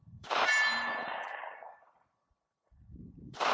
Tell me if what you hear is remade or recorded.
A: remade